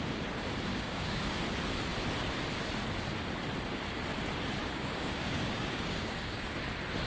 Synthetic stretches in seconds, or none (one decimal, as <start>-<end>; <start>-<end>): 0.7-1.4; 4.6-6.5

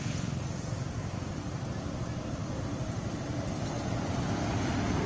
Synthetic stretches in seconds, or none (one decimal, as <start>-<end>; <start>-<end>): none

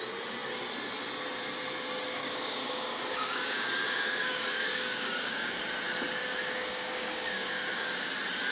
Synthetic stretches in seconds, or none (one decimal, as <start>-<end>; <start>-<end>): 2.1-5.6; 6.2-8.1

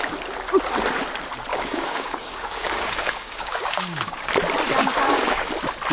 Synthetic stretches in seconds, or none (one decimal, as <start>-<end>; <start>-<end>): 1.5-4.3; 4.8-5.5

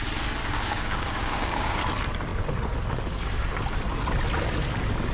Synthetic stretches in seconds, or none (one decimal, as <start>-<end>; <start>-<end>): 0.4-1.8

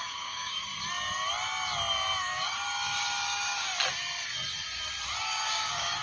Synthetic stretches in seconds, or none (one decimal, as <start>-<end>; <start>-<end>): 0.0-0.7; 2.2-3.7; 5.2-6.0